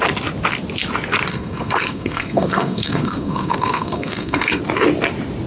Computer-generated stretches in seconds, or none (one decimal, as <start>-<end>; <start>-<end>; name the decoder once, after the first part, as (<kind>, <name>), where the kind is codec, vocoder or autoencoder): 1.3-4.6 (codec, SNAC)